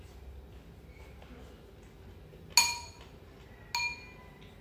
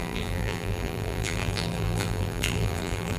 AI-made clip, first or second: second